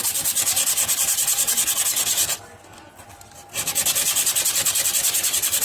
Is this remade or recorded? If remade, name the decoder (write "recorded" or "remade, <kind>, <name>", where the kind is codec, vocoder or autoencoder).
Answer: recorded